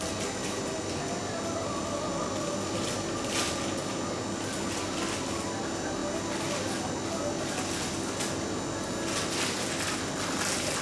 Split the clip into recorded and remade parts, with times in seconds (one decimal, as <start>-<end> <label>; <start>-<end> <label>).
0.0-10.8 recorded

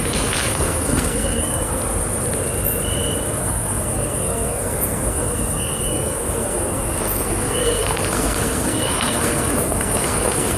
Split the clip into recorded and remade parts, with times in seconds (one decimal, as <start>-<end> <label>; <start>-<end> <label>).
0.0-1.8 remade; 1.8-3.4 recorded; 3.4-10.6 remade